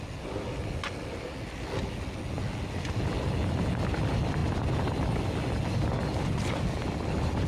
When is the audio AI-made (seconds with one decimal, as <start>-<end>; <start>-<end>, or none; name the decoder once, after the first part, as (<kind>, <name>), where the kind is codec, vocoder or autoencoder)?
none